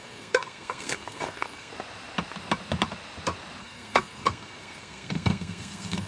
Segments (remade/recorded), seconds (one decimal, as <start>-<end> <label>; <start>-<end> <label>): 0.0-1.7 remade; 1.7-3.6 recorded; 3.6-6.1 remade